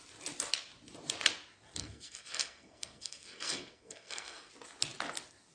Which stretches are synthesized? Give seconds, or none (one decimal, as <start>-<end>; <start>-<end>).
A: 1.8-4.5